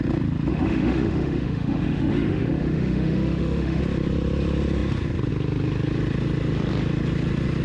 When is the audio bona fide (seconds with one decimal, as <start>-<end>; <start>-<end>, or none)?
0.0-0.5; 3.8-7.6